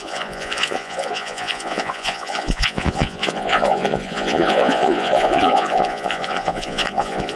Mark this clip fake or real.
fake